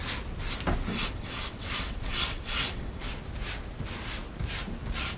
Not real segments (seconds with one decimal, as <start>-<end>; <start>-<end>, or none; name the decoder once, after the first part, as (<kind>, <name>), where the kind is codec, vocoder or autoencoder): 0.9-3.1 (vocoder, WaveNeXt)